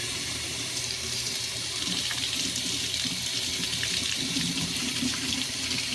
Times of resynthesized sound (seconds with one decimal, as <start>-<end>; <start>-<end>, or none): 0.0-2.0; 4.0-5.3